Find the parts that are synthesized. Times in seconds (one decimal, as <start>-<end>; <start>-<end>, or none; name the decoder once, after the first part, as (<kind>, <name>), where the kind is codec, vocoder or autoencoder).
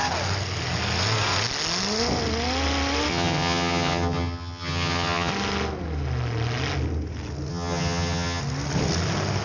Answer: 3.1-5.3 (vocoder, HiFi-GAN); 7.5-8.4